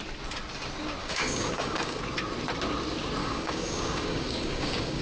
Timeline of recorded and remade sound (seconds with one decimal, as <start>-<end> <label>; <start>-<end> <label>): 0.0-1.0 recorded; 1.0-2.0 remade; 2.0-3.2 recorded; 3.2-5.0 remade